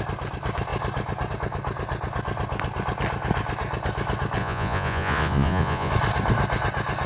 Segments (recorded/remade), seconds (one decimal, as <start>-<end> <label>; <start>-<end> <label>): 0.0-4.4 recorded; 4.4-5.9 remade; 5.9-7.1 recorded